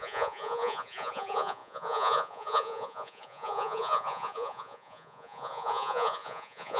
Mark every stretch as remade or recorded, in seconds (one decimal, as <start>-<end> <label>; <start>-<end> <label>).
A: 0.0-6.8 remade

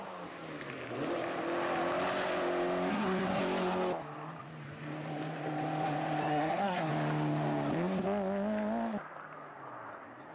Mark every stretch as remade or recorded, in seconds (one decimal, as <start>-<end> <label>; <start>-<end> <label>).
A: 0.0-2.9 recorded; 2.9-3.4 remade; 3.4-6.2 recorded; 6.2-6.9 remade; 6.9-10.3 recorded

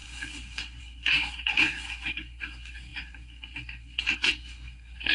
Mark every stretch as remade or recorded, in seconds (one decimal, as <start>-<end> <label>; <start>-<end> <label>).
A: 0.0-5.1 remade

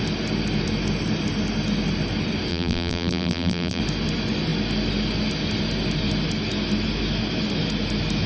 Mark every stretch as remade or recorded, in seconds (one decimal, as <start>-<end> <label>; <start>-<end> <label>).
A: 0.0-2.5 recorded; 2.5-3.8 remade; 3.8-8.3 recorded

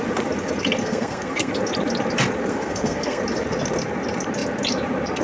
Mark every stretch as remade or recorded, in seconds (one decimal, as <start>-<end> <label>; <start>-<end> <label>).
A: 0.0-0.8 recorded; 0.8-1.5 remade; 1.5-2.5 recorded; 2.5-3.2 remade; 3.2-5.2 recorded

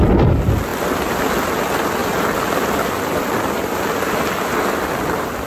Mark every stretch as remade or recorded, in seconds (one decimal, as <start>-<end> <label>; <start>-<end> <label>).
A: 0.0-0.7 recorded; 0.7-1.2 remade; 1.2-2.0 recorded; 2.0-5.5 remade

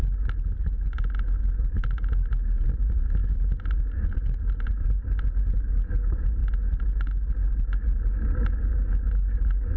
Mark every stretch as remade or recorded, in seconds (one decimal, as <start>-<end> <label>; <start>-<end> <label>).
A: 0.0-9.8 recorded

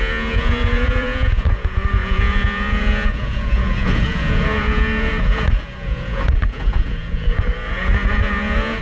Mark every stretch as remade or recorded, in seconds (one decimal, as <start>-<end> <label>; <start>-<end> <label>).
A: 0.0-8.8 remade